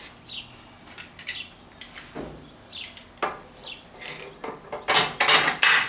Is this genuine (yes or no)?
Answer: yes